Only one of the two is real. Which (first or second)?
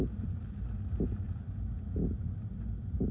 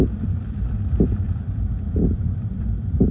first